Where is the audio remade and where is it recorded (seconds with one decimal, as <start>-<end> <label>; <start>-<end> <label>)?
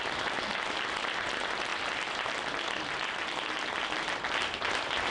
0.0-5.1 recorded